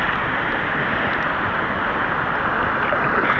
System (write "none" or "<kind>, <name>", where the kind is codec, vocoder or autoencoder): none